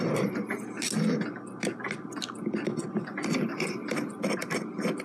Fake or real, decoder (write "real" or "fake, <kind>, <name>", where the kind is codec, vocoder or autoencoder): real